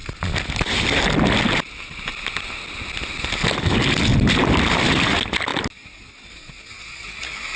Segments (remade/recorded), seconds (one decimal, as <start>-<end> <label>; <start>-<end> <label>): 0.0-7.6 recorded